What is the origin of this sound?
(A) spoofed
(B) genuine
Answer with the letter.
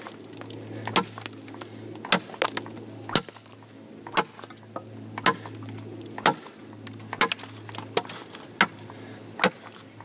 B